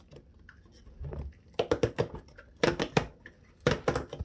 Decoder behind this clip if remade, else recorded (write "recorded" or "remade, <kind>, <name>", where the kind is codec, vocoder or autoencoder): recorded